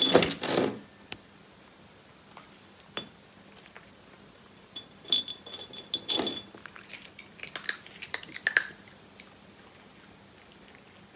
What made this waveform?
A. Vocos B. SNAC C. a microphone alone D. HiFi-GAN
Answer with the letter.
C